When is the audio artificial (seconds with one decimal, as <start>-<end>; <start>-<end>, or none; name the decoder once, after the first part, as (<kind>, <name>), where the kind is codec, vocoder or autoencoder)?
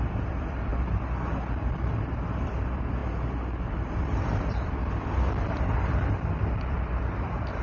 0.0-0.7 (vocoder, BigVGAN v2); 2.1-3.0; 3.7-7.6